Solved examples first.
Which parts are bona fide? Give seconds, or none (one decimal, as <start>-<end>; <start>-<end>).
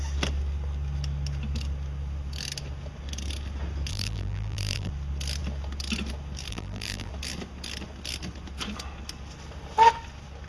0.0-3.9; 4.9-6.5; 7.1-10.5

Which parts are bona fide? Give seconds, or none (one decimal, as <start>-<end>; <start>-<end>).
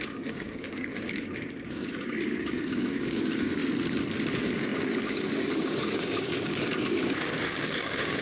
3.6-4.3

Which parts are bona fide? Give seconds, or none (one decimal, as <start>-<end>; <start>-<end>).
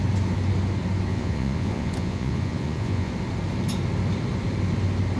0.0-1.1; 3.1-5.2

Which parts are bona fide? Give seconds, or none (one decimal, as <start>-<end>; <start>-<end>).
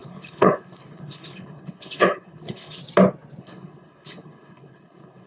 2.8-3.4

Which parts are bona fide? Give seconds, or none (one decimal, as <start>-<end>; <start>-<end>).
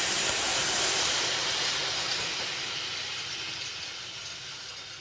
0.0-5.0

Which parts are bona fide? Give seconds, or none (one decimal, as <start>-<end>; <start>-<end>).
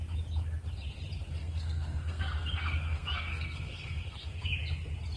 0.0-1.4; 4.5-5.2